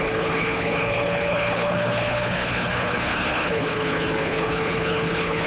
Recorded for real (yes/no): no